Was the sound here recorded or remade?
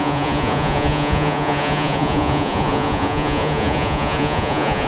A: remade